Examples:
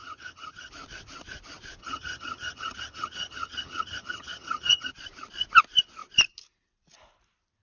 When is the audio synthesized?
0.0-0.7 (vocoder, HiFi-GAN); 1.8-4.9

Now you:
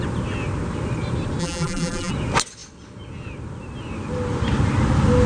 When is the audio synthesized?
1.4-2.1 (vocoder, BigVGAN v2)

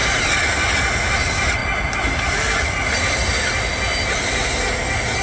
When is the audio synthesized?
0.0-0.7 (vocoder, BigVGAN v2); 1.6-3.3

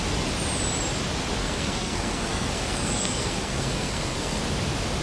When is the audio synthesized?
1.4-4.4 (codec, SNAC)